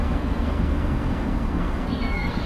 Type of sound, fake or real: fake